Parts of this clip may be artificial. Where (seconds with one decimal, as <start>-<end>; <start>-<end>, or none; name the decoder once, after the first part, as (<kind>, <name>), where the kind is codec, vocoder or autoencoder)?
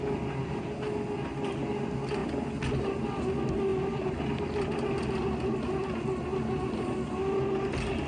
none